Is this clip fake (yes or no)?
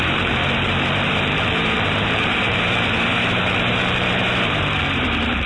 yes